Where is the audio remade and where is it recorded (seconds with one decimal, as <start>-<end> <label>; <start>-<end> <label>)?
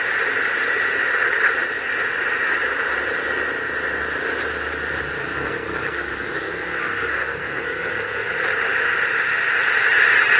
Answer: 0.0-5.2 recorded; 5.2-8.3 remade; 8.3-10.4 recorded